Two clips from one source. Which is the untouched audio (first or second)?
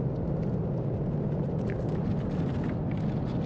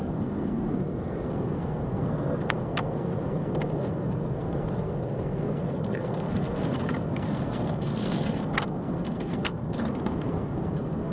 first